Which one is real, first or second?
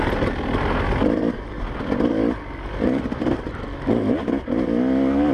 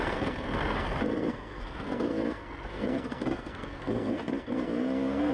first